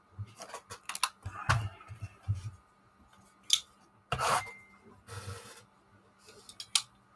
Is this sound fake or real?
real